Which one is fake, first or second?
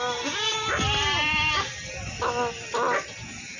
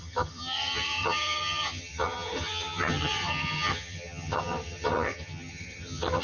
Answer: second